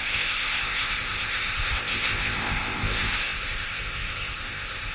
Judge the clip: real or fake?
fake